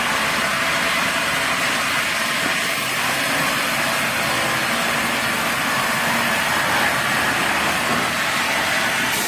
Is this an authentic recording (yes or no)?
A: yes